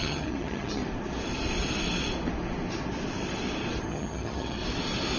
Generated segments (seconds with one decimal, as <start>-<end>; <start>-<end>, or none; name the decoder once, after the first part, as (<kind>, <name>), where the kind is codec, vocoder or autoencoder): 0.0-0.8 (vocoder, HiFi-GAN); 3.9-4.6